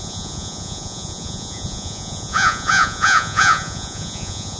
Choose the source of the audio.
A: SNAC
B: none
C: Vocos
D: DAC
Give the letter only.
C